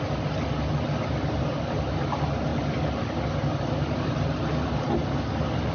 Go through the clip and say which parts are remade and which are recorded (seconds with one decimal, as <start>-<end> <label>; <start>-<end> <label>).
0.0-5.7 recorded